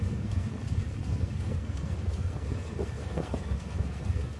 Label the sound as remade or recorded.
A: remade